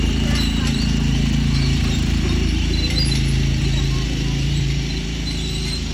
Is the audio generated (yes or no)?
yes